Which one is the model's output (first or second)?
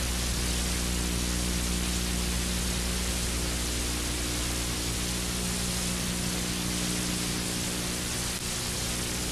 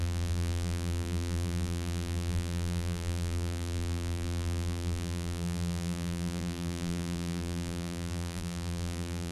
second